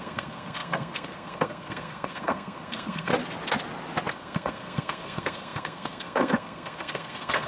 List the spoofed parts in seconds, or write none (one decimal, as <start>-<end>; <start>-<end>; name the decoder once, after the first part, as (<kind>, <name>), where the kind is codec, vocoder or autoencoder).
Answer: 0.0-3.1 (codec, SNAC); 4.1-7.5